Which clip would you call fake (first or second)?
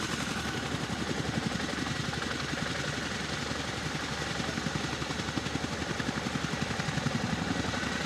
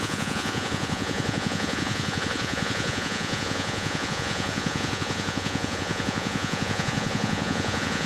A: second